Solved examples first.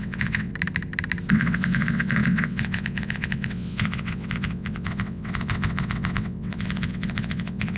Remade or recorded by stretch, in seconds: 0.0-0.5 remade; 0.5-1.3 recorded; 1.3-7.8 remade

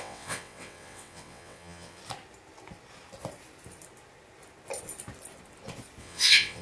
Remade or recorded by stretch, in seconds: 0.0-2.0 remade; 2.0-6.0 recorded; 6.0-6.6 remade

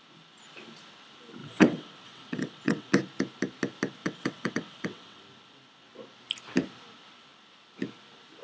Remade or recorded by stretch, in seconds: 0.0-1.4 recorded; 1.4-2.9 remade; 2.9-4.0 recorded; 4.0-5.2 remade; 5.2-8.4 recorded